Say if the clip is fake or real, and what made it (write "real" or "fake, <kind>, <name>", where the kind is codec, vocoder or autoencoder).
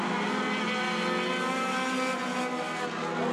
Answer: real